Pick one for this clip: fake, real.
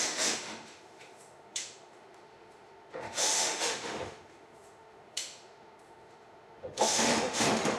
fake